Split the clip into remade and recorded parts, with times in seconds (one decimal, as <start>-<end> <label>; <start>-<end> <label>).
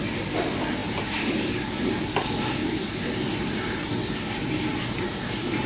0.0-0.8 recorded; 0.8-2.0 remade; 2.0-2.6 recorded; 2.6-3.9 remade; 3.9-4.7 recorded; 4.7-5.7 remade